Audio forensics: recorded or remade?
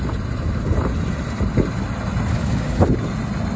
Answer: recorded